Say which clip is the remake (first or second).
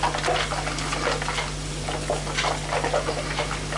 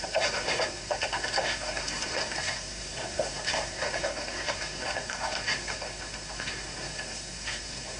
second